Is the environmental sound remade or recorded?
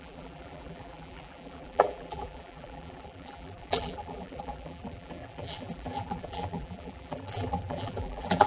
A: remade